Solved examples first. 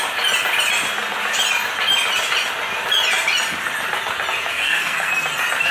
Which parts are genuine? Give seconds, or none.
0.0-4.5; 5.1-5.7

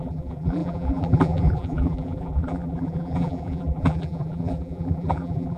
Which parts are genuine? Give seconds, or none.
none

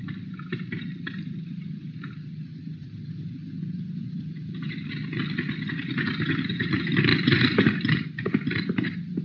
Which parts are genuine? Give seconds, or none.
3.4-4.2; 5.0-5.7

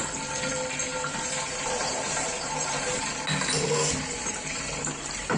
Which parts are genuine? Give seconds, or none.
0.0-0.9; 3.2-4.2

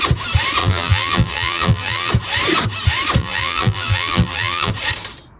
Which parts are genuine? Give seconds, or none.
0.0-0.6; 2.1-3.2; 4.7-5.4

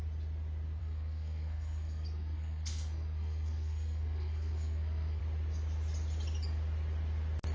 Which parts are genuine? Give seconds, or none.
0.0-0.8; 5.2-7.5